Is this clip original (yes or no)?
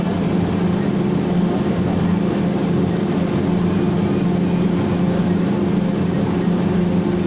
yes